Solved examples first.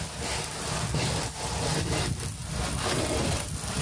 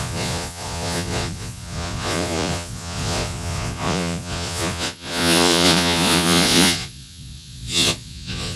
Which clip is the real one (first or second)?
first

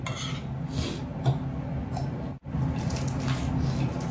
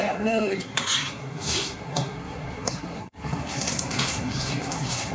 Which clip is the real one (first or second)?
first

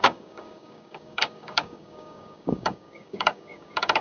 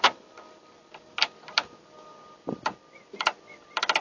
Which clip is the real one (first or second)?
second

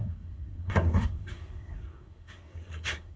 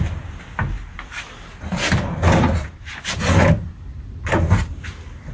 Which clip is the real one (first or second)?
second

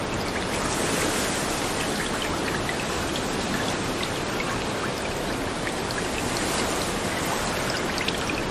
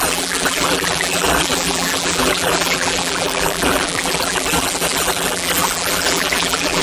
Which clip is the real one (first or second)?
first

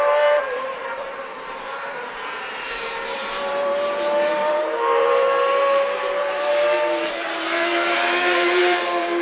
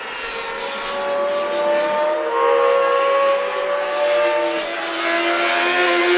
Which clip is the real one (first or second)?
second